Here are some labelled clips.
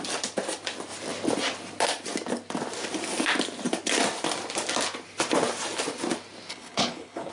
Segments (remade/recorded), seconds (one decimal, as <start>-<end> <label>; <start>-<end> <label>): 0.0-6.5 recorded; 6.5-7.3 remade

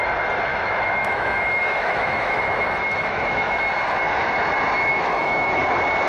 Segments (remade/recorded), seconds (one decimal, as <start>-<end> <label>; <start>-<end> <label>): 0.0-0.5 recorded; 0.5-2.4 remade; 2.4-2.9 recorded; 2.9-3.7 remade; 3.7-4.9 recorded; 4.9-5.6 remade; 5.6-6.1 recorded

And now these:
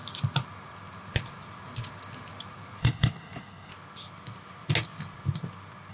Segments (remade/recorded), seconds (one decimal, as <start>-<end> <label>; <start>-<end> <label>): 0.0-2.8 recorded; 2.8-3.7 remade; 3.7-5.9 recorded